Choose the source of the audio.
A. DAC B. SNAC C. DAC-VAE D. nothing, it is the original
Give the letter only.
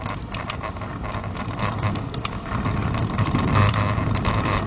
D